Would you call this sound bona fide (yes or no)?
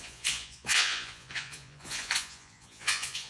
no